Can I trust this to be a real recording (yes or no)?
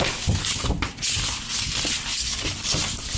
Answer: no